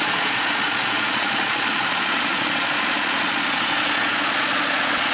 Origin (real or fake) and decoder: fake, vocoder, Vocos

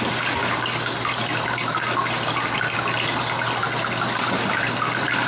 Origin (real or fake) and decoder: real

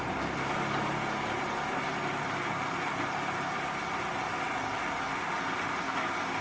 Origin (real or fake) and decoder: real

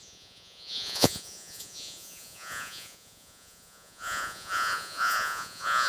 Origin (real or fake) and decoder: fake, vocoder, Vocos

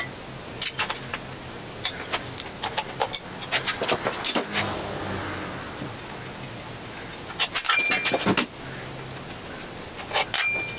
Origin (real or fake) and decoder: real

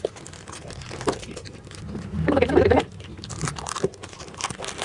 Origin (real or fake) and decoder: real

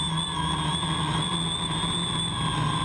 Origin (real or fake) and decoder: real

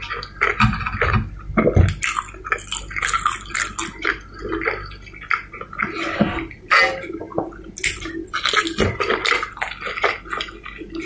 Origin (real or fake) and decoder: real